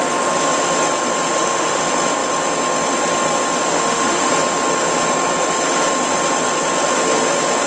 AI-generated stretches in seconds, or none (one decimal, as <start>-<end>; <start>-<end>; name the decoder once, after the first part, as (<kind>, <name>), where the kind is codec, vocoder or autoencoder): 1.3-1.8 (autoencoder, DAC-VAE); 3.7-4.3